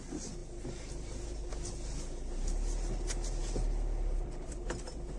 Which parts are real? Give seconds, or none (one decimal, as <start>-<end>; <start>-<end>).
0.0-5.2